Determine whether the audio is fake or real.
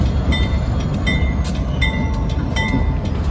real